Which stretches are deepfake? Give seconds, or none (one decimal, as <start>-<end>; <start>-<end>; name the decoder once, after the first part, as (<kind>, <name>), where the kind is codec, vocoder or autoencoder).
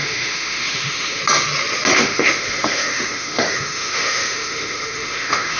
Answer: 0.0-1.2 (autoencoder, DAC-VAE); 2.0-5.6